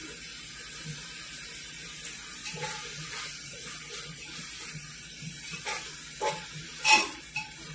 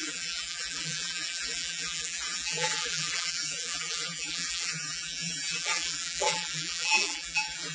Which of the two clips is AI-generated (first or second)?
second